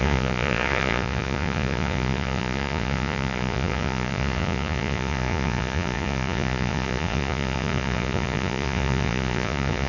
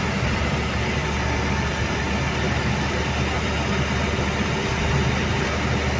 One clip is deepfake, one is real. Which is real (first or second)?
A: second